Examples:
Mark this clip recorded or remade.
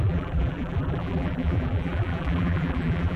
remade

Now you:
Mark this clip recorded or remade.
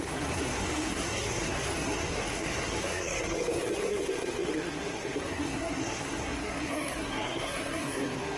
remade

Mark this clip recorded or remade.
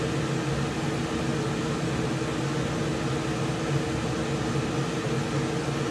recorded